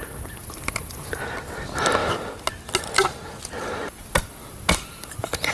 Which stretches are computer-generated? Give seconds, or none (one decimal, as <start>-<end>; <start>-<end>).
none